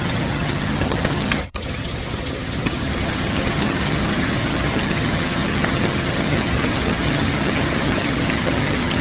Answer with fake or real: fake